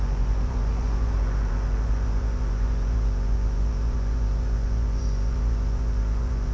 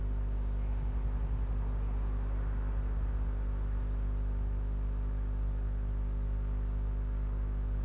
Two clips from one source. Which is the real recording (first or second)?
second